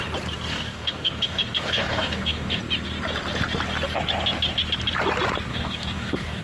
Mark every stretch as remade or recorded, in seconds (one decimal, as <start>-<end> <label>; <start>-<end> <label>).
0.0-0.5 recorded; 0.5-2.6 remade; 2.6-5.5 recorded; 5.5-6.4 remade